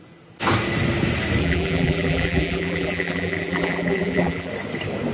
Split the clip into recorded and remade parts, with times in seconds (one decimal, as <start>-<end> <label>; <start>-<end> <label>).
0.0-1.4 recorded; 1.4-4.5 remade; 4.5-5.1 recorded